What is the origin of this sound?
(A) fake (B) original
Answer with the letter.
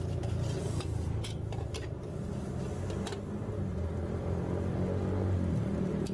B